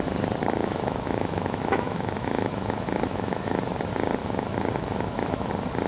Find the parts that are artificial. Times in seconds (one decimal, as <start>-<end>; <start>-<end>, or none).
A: 0.6-3.6; 4.2-5.5